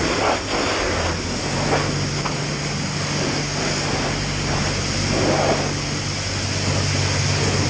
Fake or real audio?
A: real